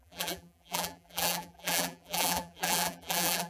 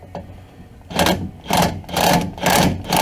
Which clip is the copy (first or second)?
first